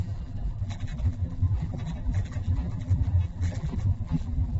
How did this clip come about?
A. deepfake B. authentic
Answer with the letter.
A